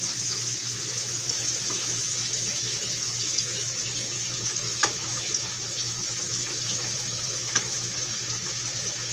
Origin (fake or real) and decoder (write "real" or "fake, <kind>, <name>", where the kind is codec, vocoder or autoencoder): fake, autoencoder, DAC-VAE